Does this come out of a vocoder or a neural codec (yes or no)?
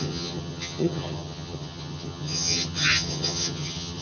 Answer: yes